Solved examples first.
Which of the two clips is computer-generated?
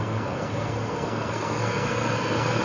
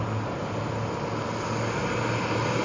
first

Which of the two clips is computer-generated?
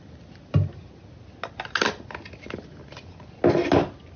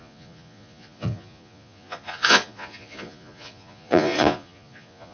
second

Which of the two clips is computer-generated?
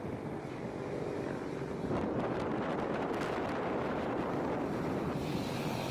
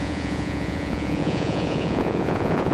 second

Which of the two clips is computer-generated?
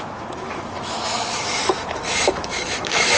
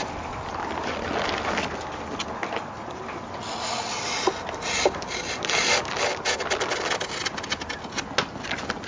first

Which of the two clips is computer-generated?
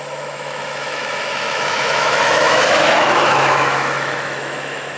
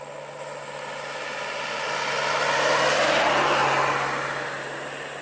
first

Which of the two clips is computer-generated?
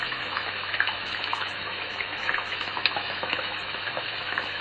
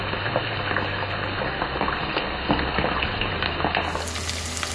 first